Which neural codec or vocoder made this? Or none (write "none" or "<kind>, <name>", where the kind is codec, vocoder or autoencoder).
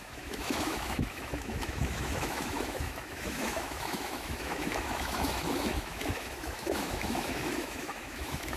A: autoencoder, DAC-VAE